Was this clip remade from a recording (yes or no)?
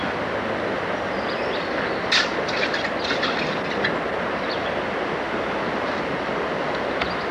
no